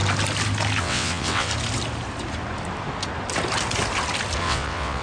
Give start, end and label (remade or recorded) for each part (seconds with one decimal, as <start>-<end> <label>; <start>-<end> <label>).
0.0-0.8 recorded; 0.8-1.5 remade; 1.5-4.4 recorded; 4.4-5.0 remade